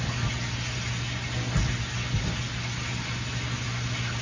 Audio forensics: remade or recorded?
recorded